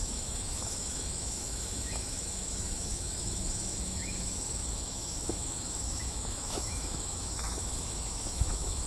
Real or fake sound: fake